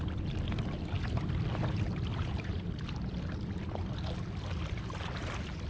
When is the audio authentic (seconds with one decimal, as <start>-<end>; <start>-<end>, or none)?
0.0-2.1; 2.7-5.7